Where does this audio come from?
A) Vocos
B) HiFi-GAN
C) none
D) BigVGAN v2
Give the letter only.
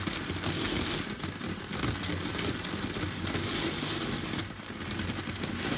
C